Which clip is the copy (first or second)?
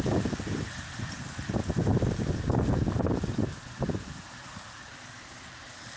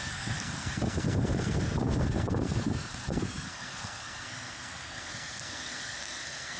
second